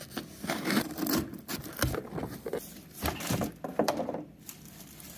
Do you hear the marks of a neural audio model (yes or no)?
no